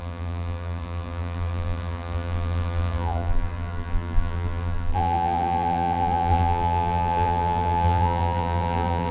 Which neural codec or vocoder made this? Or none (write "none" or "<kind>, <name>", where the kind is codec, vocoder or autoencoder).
vocoder, BigVGAN v2